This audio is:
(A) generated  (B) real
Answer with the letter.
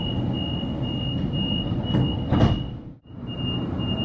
B